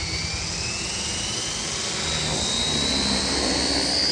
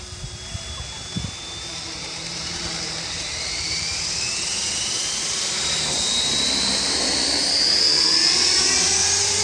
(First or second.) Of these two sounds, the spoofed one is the second